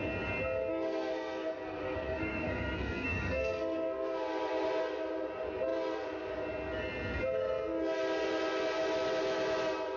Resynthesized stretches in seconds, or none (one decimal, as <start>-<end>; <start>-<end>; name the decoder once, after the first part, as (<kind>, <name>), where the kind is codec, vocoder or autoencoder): 0.7-4.2 (codec, SNAC)

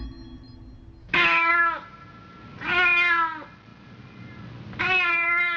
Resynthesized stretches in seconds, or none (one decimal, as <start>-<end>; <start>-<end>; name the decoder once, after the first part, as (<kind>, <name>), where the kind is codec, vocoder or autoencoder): 1.0-1.5 (autoencoder, DAC-VAE)

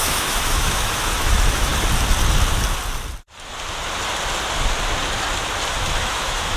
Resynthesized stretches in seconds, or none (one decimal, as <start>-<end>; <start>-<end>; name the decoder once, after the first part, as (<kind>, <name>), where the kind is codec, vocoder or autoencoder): 0.0-1.7 (autoencoder, DAC-VAE); 5.7-6.6

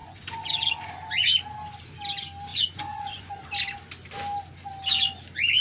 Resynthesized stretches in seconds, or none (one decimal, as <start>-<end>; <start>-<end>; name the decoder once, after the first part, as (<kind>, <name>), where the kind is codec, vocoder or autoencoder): 0.0-0.9 (vocoder, Vocos); 2.5-3.4

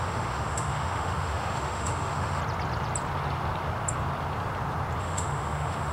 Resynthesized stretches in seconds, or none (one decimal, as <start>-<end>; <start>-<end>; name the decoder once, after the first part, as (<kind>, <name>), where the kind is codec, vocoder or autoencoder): 0.0-2.4 (autoencoder, DAC-VAE); 5.0-5.9

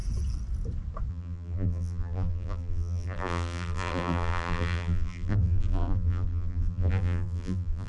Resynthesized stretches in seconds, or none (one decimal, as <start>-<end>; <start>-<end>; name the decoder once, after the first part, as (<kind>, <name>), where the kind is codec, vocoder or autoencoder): 1.1-7.9 (vocoder, BigVGAN v2)

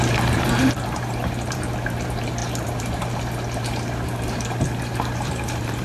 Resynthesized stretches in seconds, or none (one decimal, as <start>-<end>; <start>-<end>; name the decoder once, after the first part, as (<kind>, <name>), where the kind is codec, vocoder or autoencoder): 0.0-5.8 (vocoder, BigVGAN v2)

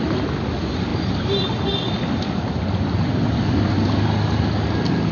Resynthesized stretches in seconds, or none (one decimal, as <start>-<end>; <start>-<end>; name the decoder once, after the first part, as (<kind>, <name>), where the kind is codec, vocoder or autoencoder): none